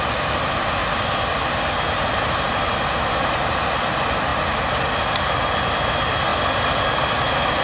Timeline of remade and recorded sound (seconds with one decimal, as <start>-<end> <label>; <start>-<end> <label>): 0.0-7.6 recorded